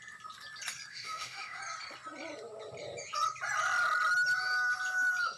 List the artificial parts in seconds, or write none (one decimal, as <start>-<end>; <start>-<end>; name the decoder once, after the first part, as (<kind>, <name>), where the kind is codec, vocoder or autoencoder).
0.9-1.6 (autoencoder, DAC-VAE)

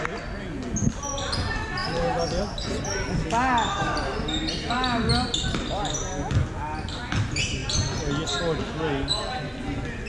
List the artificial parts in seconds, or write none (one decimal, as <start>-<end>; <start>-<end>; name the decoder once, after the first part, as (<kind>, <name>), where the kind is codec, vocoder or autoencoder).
1.8-2.4 (vocoder, BigVGAN v2)